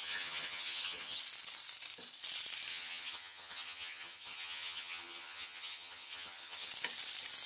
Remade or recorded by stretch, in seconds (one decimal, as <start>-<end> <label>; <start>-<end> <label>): 0.0-1.2 remade; 1.2-2.7 recorded; 2.7-6.7 remade; 6.7-7.5 recorded